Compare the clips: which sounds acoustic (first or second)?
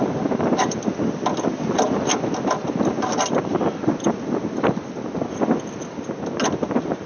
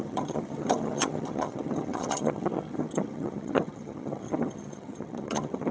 first